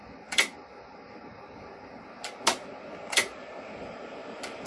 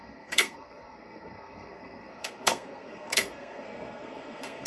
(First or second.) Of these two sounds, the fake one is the second